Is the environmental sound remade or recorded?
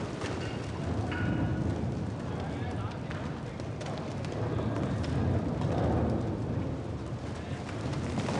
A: recorded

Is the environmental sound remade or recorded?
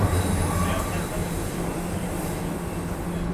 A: recorded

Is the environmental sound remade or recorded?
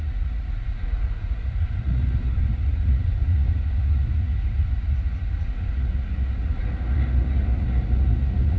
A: remade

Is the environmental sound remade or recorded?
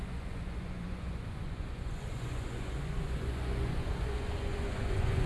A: remade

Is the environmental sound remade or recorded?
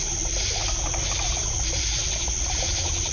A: recorded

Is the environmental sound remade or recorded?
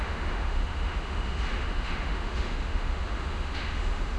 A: remade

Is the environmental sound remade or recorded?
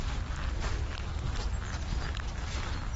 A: recorded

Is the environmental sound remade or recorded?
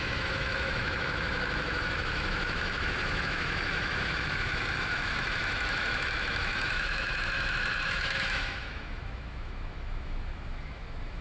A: remade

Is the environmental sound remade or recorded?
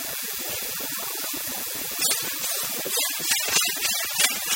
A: recorded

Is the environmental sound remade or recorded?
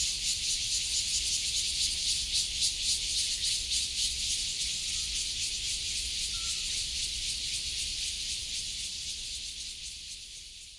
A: recorded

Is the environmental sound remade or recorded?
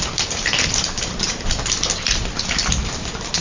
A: recorded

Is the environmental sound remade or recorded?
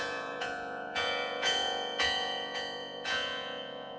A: remade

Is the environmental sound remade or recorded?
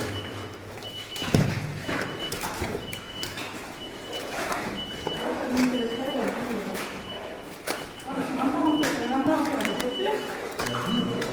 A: remade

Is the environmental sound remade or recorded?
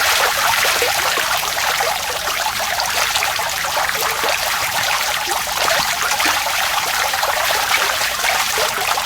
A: remade